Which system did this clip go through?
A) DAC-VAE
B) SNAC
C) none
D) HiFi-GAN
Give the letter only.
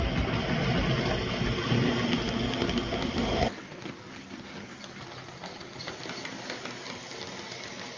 C